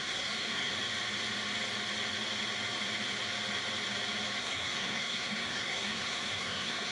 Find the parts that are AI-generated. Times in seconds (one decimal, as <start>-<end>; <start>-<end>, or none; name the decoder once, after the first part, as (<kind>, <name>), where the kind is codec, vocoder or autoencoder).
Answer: 0.0-0.7 (codec, SNAC); 4.4-6.9